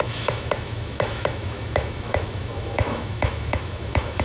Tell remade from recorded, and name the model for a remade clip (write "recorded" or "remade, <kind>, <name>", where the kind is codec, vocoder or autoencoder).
remade, autoencoder, DAC-VAE